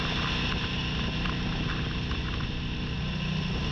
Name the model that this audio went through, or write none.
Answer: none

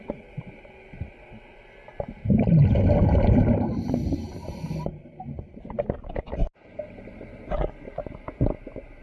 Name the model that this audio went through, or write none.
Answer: none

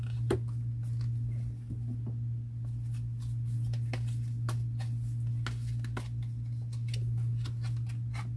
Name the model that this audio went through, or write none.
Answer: none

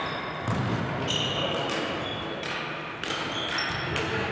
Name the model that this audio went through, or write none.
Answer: none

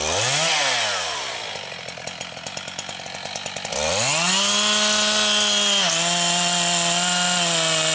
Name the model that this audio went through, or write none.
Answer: none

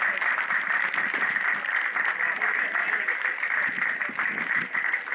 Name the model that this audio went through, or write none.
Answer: none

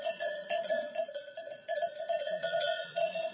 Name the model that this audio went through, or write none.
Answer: vocoder, Vocos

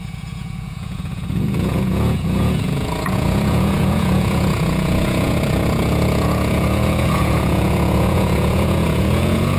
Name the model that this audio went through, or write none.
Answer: vocoder, Vocos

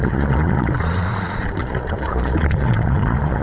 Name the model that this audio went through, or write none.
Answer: vocoder, Vocos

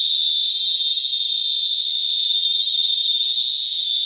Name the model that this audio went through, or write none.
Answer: none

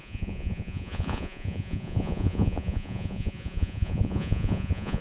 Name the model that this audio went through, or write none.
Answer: vocoder, Vocos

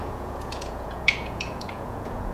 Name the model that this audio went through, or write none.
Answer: vocoder, Vocos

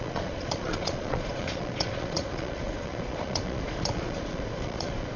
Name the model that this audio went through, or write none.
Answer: vocoder, Vocos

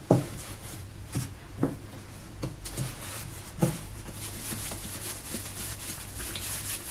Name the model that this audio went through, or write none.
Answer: vocoder, Vocos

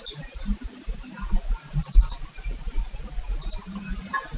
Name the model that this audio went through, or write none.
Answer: none